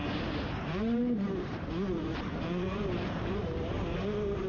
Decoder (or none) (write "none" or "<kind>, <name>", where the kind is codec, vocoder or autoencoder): vocoder, BigVGAN v2